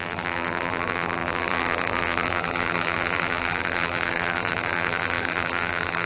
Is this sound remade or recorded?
remade